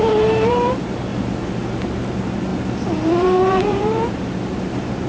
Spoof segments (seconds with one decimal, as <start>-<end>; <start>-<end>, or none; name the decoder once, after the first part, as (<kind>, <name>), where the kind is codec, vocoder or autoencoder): 0.0-1.1 (vocoder, BigVGAN v2); 1.7-5.1